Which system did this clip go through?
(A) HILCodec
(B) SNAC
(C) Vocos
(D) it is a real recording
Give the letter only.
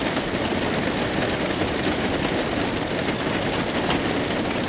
D